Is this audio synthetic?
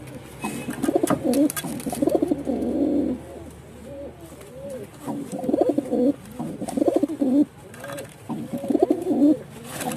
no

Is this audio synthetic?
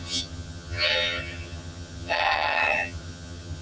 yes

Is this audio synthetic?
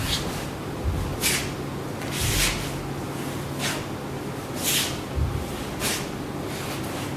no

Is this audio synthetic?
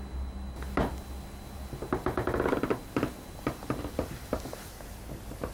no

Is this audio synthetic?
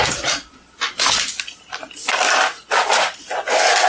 no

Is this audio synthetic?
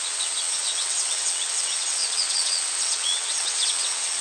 yes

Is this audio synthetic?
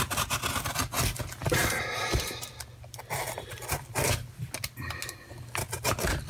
no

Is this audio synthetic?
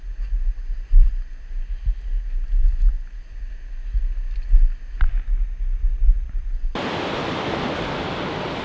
no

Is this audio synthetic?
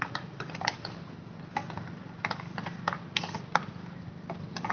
no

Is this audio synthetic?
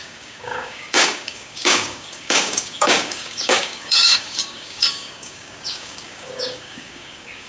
yes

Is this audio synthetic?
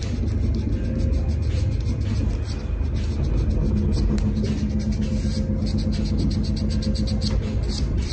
no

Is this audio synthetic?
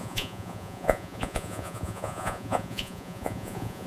yes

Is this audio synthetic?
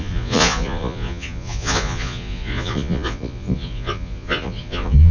yes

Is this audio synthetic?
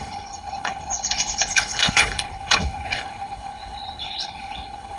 yes